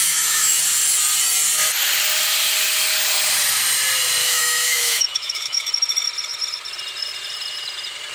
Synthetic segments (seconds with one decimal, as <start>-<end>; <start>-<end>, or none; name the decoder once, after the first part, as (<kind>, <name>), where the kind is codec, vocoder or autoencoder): 0.0-0.6 (autoencoder, DAC-VAE); 4.2-5.7